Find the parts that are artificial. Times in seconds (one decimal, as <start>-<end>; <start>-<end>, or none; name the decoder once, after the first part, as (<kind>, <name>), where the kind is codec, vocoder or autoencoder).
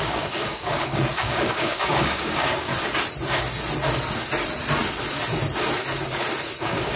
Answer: 0.0-2.7 (codec, DAC); 6.6-7.0